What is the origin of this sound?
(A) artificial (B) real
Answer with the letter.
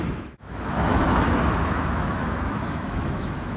A